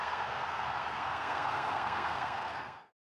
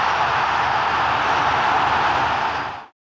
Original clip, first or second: second